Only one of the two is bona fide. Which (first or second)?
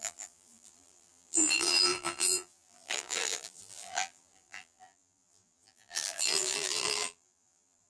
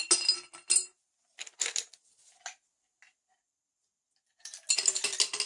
second